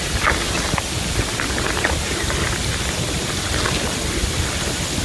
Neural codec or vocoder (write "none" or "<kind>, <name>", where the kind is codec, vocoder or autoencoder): none